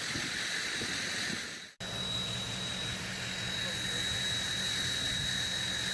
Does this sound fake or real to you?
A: real